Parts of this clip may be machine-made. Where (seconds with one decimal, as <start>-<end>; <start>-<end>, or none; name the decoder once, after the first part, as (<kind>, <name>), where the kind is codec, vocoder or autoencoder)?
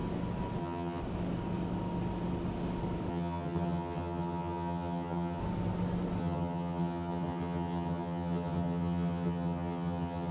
0.6-1.0 (vocoder, HiFi-GAN); 3.1-5.4; 6.2-10.3